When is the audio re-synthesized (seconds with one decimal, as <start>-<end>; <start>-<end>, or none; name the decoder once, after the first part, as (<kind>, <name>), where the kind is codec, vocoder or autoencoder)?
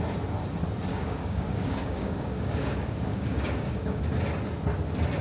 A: 0.9-4.0 (codec, DAC)